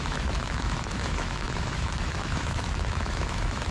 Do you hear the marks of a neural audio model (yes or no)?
yes